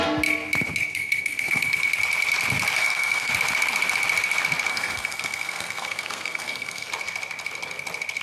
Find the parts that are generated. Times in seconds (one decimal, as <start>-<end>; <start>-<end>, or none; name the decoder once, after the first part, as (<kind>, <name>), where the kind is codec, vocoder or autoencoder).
0.9-1.9 (codec, SNAC); 2.8-3.3; 4.7-6.9